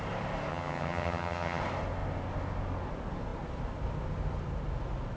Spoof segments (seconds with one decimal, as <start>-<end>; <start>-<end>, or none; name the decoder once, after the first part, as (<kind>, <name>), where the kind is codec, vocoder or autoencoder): 0.5-1.6 (vocoder, HiFi-GAN)